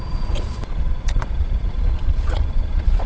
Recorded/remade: remade